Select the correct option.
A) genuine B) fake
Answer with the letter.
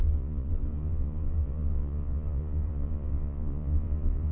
B